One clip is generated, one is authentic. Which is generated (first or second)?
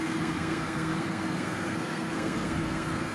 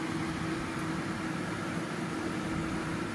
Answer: first